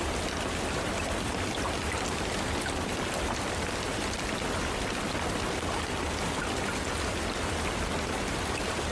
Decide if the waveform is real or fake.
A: real